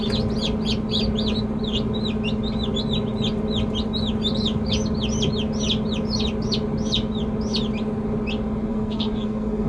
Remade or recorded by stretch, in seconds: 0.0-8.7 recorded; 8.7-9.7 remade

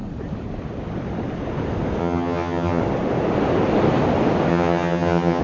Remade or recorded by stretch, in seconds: 0.0-2.0 recorded; 2.0-2.8 remade; 2.8-4.5 recorded; 4.5-5.4 remade

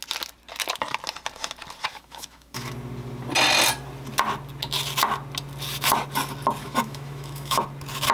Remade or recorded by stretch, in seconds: 0.0-1.9 recorded; 1.9-2.7 remade; 2.7-6.6 recorded; 6.6-7.6 remade; 7.6-8.1 recorded

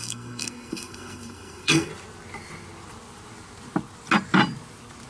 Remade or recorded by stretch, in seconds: 0.0-1.9 remade; 1.9-5.1 recorded

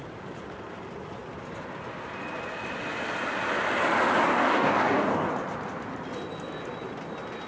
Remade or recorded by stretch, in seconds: 0.0-4.3 recorded; 4.3-5.3 remade; 5.3-7.5 recorded

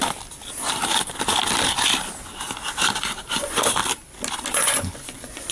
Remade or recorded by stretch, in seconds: 0.0-3.3 recorded; 3.3-3.8 remade; 3.8-4.5 recorded; 4.5-5.5 remade

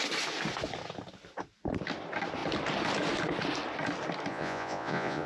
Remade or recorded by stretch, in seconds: 0.0-4.3 recorded; 4.3-5.3 remade

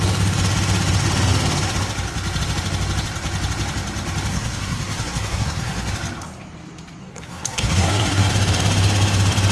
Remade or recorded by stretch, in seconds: 0.0-4.3 recorded; 4.3-5.9 remade; 5.9-7.0 recorded; 7.0-8.3 remade; 8.3-9.5 recorded